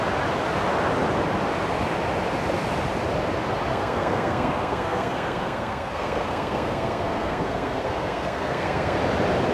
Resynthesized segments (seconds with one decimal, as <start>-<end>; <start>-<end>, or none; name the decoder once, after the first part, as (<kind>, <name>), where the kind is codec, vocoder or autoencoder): 3.7-9.0 (codec, SNAC)